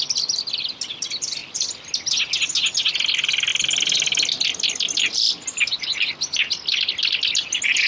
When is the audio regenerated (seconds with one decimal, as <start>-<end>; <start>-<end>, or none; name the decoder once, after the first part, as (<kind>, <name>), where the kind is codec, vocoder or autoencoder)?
none